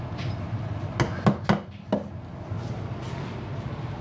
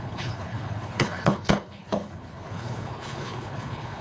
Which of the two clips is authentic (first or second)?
first